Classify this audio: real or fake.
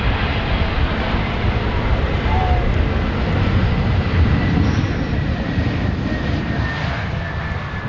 real